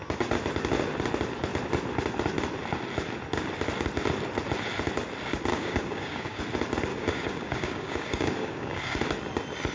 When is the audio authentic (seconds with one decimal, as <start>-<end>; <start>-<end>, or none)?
0.0-5.5; 6.4-6.9; 9.0-9.7